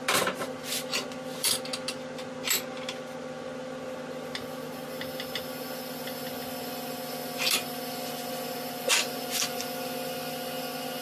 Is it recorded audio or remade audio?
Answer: recorded